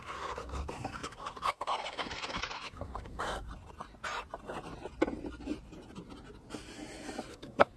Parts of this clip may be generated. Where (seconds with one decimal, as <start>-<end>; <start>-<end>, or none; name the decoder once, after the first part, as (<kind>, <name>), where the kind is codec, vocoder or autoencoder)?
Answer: 0.0-3.5 (codec, SNAC); 7.3-7.8